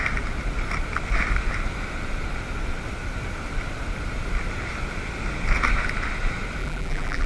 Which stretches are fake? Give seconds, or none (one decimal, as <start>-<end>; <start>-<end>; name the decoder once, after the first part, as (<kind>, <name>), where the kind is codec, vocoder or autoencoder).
6.6-7.3 (vocoder, BigVGAN v2)